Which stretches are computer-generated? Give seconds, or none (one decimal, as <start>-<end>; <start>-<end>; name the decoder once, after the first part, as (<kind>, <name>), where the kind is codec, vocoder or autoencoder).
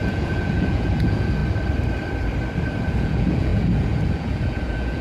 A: 0.0-1.4 (vocoder, Vocos); 2.8-5.0